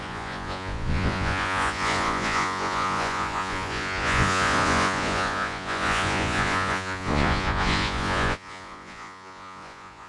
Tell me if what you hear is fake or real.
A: fake